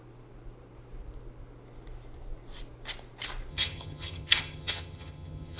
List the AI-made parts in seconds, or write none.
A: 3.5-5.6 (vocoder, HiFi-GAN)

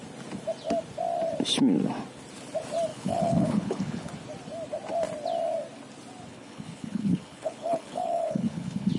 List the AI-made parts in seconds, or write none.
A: 2.9-4.1 (codec, HILCodec); 6.3-9.0

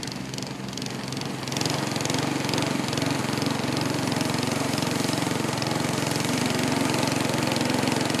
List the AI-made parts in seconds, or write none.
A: 3.2-6.4 (vocoder, BigVGAN v2)

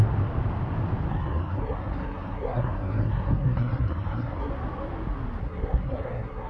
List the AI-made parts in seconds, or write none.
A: 1.1-4.5 (codec, SNAC); 5.4-6.5

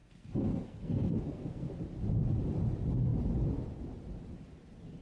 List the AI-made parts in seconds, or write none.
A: 0.0-1.7 (codec, SNAC)

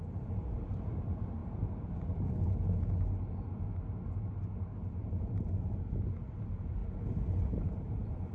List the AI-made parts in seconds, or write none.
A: 0.0-1.4 (vocoder, BigVGAN v2); 6.3-6.8; 7.5-8.3